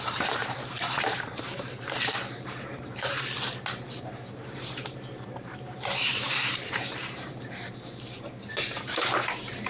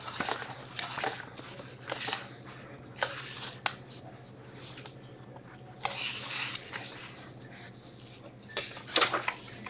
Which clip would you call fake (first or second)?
first